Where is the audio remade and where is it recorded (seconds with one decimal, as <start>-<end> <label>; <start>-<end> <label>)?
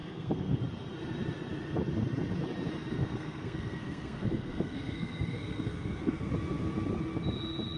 0.0-0.6 remade; 0.6-3.0 recorded; 3.0-6.3 remade; 6.3-7.8 recorded